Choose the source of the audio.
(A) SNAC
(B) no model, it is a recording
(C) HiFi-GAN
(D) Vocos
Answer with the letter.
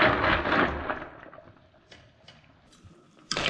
B